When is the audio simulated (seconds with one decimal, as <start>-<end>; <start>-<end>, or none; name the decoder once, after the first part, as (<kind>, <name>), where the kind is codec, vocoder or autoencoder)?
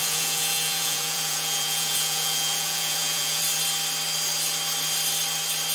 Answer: 0.0-3.4 (vocoder, Vocos)